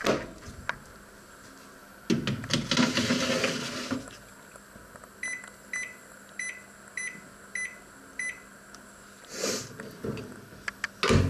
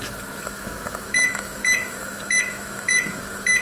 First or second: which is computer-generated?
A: second